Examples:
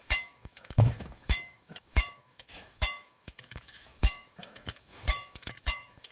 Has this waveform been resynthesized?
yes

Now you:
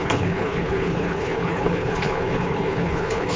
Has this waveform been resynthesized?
yes